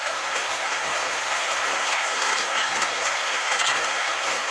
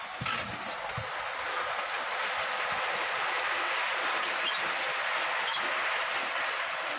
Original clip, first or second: second